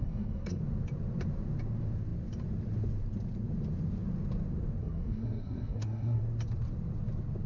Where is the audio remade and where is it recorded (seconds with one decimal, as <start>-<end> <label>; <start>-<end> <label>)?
0.0-0.6 remade; 0.6-4.8 recorded; 4.8-6.2 remade; 6.2-7.5 recorded

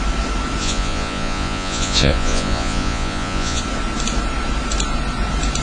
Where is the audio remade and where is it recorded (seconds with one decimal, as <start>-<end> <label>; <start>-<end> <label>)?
0.0-0.6 recorded; 0.6-3.6 remade; 3.6-5.6 recorded